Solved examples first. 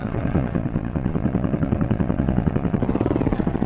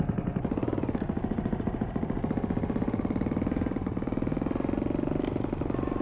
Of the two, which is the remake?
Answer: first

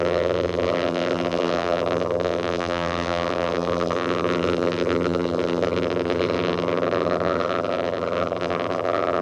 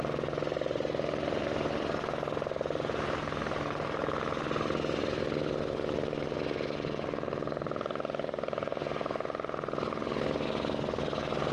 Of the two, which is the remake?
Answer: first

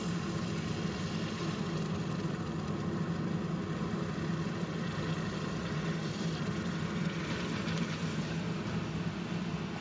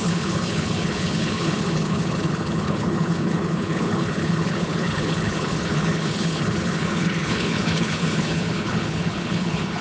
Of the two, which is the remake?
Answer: second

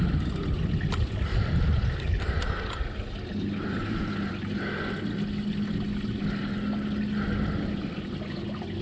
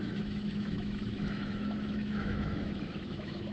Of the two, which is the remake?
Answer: second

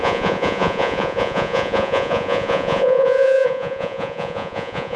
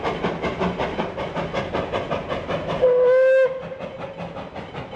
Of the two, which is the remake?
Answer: first